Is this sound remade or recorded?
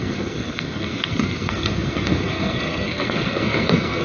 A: remade